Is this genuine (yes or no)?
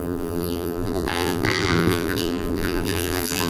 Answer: no